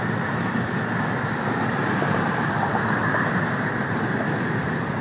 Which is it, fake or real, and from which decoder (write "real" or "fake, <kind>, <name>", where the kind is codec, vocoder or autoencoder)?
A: fake, vocoder, BigVGAN v2